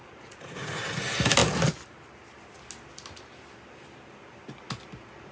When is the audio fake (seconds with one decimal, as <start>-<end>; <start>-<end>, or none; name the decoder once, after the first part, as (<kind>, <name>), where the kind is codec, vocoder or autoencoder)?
0.0-0.9 (vocoder, Vocos)